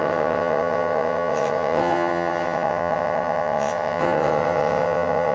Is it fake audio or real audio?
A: fake